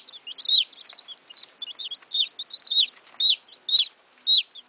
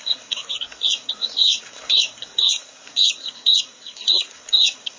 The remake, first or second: second